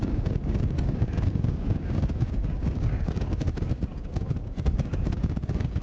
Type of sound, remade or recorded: remade